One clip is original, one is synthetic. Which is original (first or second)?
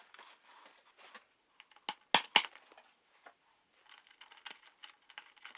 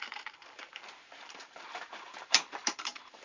first